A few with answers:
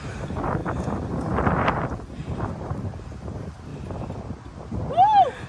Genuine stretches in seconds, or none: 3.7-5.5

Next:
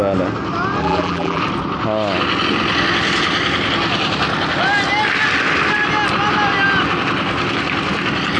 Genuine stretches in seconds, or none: 0.0-0.8; 1.4-8.4

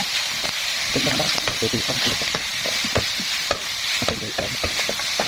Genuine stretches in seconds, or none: 0.0-5.3